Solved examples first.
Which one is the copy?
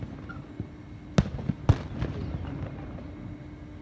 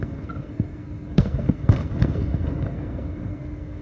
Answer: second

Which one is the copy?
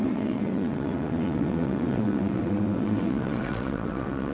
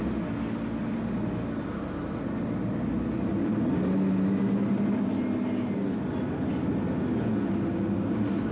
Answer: first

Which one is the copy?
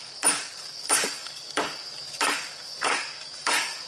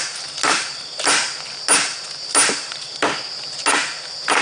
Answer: first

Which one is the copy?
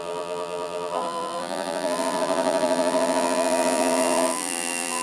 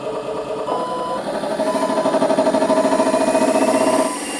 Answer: first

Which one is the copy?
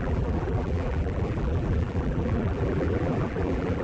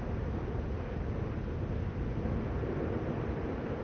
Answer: first